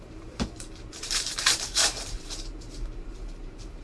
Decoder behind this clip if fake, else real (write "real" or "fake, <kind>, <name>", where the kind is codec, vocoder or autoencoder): fake, vocoder, BigVGAN v2